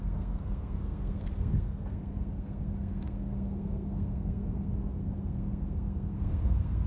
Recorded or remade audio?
remade